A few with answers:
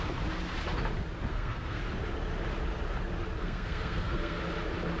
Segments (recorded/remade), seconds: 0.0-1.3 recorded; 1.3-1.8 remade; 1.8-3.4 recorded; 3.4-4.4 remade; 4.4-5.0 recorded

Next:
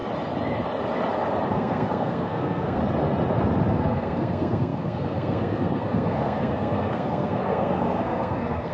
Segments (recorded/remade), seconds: 0.0-1.5 recorded; 1.5-2.8 remade; 2.8-3.7 recorded; 3.7-8.7 remade